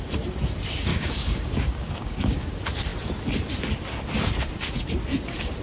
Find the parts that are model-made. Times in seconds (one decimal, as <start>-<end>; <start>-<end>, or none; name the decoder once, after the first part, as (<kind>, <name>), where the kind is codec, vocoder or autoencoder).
0.9-2.5 (codec, DAC)